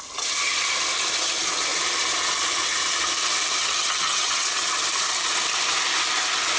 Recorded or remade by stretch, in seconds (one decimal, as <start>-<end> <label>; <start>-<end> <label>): 0.0-3.6 recorded; 3.6-4.5 remade; 4.5-6.6 recorded